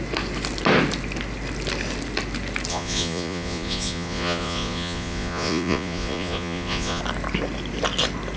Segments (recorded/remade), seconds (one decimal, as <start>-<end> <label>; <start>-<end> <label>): 0.0-2.7 recorded; 2.7-7.0 remade; 7.0-8.4 recorded